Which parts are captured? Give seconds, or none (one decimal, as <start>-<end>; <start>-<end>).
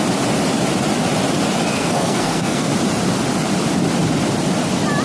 0.0-1.7; 2.7-5.0